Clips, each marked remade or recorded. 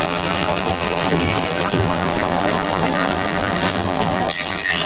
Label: remade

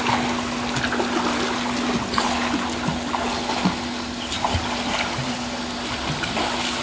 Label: recorded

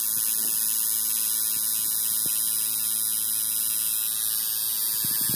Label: recorded